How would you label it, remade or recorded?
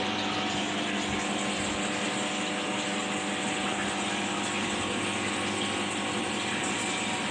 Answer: recorded